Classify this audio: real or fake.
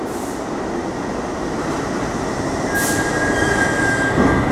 real